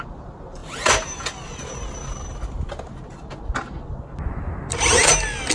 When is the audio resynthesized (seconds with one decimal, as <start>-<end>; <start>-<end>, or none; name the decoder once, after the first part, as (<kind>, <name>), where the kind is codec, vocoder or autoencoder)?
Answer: none